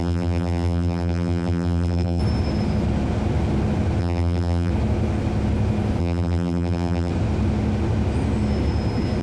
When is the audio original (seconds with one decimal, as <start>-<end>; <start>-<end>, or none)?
2.2-4.0; 4.7-6.0; 7.1-9.2